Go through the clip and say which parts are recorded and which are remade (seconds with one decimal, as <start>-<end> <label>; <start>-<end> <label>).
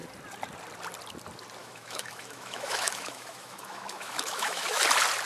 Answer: 0.0-1.6 recorded; 1.6-4.8 remade; 4.8-5.3 recorded